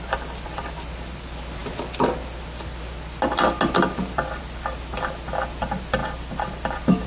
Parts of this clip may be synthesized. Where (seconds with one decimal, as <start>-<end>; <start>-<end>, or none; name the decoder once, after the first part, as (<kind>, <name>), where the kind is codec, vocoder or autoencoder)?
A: none